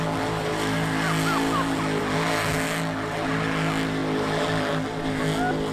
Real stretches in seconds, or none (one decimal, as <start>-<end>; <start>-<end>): 0.0-5.7